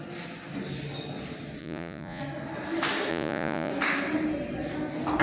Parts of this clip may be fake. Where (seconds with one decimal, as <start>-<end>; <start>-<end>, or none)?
1.6-2.2; 3.1-3.7